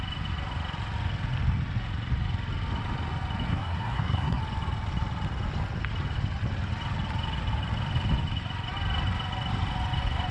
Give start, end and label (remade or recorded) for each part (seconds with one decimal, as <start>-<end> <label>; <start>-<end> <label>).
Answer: 0.0-3.5 recorded; 3.5-4.4 remade; 4.4-10.3 recorded